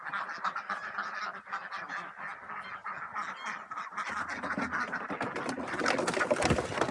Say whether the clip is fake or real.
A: real